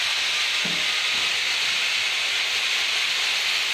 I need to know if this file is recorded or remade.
recorded